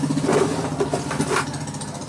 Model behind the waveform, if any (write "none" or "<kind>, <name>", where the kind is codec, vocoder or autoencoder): none